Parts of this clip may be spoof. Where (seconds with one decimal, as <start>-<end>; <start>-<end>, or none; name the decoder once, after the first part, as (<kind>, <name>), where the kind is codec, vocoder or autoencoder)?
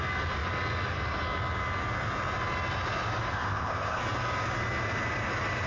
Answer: 3.3-4.0 (codec, ZipCodec)